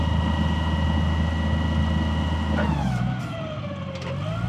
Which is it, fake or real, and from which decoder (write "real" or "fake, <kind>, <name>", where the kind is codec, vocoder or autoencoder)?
real